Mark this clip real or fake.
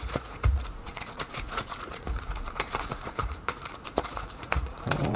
fake